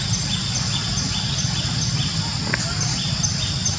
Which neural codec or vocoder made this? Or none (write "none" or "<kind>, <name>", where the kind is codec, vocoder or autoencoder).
none